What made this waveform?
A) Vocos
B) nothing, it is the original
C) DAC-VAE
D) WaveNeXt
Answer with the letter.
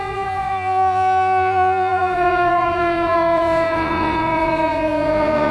A